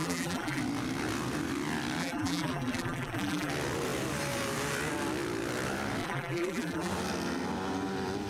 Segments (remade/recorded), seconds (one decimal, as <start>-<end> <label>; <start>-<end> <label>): 0.0-0.6 remade; 0.6-2.0 recorded; 2.0-3.5 remade; 3.5-6.0 recorded; 6.0-6.9 remade; 6.9-8.3 recorded